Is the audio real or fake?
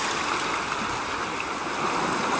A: real